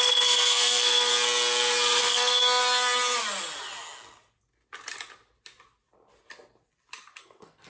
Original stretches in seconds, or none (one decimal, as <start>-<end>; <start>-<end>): 1.1-2.0; 2.6-7.2

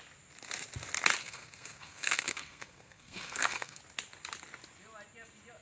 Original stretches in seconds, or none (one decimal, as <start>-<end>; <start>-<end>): 0.0-1.2; 3.8-5.6

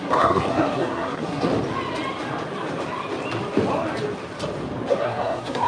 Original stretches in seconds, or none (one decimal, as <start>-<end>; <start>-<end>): 1.5-4.9